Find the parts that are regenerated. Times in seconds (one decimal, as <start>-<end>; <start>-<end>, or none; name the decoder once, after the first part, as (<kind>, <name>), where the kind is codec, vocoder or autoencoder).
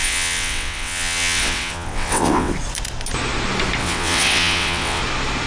0.0-2.5 (vocoder, WaveNeXt); 3.8-5.0